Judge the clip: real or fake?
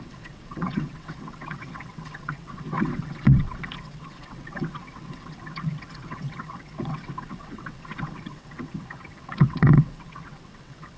fake